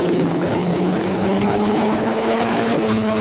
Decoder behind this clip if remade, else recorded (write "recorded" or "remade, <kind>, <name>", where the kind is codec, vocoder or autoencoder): remade, codec, HILCodec